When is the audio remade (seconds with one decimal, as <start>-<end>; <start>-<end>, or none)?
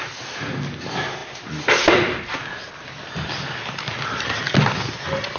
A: 1.2-4.4